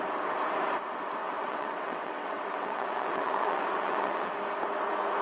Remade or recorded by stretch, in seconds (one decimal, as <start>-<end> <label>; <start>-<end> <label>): 0.0-1.2 recorded; 1.2-4.3 remade; 4.3-5.2 recorded

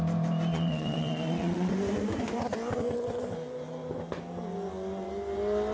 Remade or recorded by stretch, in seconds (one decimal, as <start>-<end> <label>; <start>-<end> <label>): 0.0-0.5 recorded; 0.5-1.7 remade; 1.7-5.7 recorded

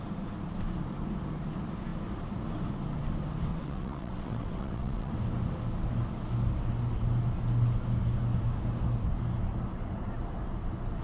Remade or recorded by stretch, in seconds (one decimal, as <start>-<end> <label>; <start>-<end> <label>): 0.0-3.5 recorded; 3.5-5.1 remade; 5.1-11.0 recorded

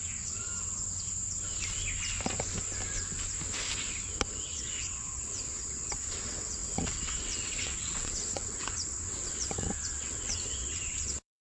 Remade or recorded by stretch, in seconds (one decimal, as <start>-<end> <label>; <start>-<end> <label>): 0.0-0.5 remade; 0.5-4.4 recorded; 4.4-11.4 remade